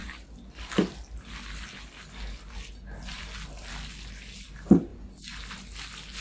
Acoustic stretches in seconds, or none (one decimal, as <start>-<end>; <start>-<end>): 0.0-6.2